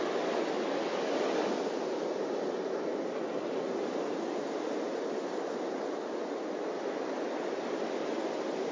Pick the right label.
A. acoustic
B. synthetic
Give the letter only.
A